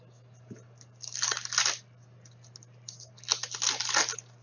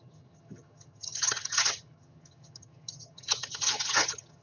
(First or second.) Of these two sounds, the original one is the first